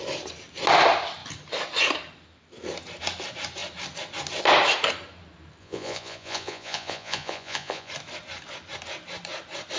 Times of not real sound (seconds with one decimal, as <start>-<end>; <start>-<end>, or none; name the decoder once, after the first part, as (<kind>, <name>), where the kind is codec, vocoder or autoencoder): 5.6-7.9 (vocoder, Vocos)